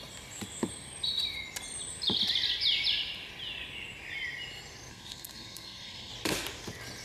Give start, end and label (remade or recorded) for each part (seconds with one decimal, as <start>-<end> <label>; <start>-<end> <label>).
0.0-4.9 recorded; 4.9-6.1 remade; 6.1-7.0 recorded